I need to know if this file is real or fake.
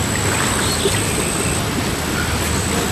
real